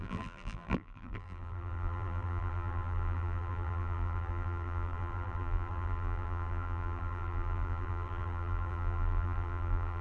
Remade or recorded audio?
remade